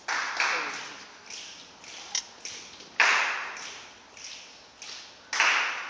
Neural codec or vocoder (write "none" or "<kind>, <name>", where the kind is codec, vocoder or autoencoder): none